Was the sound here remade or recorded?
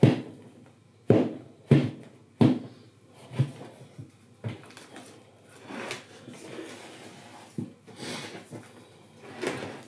recorded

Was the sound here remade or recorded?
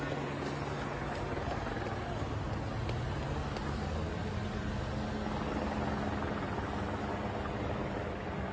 recorded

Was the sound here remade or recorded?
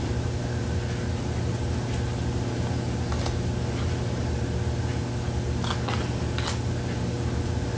recorded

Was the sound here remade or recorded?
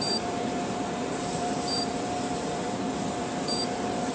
remade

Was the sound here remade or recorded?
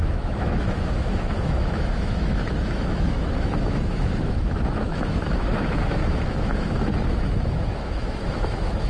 remade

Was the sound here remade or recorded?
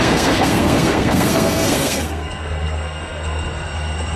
remade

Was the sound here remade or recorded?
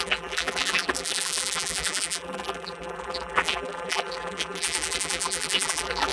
remade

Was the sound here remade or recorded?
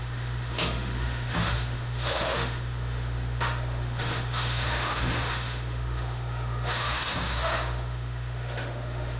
remade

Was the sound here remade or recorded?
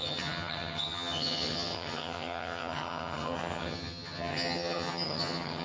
remade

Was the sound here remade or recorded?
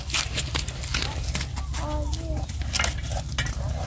recorded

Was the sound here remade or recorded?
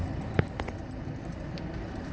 recorded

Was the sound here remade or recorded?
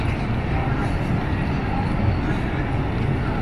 recorded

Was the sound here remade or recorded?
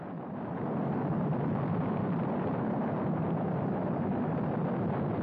recorded